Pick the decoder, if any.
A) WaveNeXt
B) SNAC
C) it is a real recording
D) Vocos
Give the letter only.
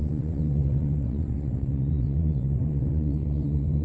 A